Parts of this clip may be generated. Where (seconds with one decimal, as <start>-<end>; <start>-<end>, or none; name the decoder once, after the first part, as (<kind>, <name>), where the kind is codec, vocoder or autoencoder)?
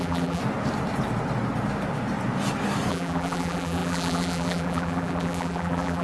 0.0-0.4 (vocoder, BigVGAN v2); 2.9-6.0